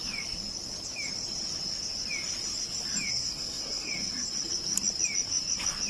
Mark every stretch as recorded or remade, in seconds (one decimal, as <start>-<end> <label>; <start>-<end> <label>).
0.0-3.1 recorded; 3.1-3.9 remade; 3.9-5.9 recorded